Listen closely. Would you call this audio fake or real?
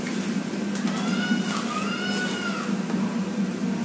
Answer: real